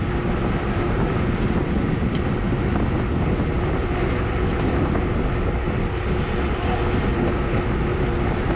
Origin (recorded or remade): recorded